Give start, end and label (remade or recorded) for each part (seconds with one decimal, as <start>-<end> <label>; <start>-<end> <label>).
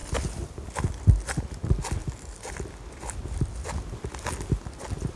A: 0.0-5.2 recorded